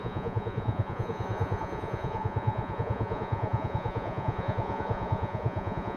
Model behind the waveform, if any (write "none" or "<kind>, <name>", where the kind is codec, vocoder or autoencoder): vocoder, Vocos